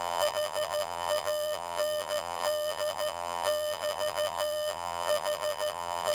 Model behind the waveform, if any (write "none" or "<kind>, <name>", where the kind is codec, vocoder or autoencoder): vocoder, BigVGAN v2